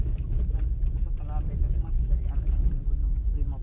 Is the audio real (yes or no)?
yes